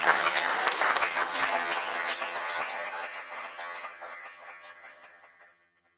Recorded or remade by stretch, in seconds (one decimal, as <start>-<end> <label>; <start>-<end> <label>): 0.0-0.5 remade; 0.5-1.0 recorded; 1.0-6.0 remade